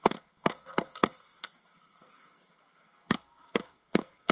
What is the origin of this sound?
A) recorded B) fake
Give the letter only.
B